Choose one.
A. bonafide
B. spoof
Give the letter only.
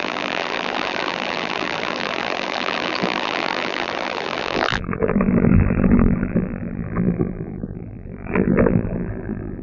B